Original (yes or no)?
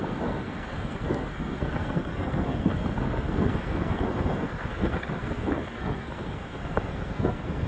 no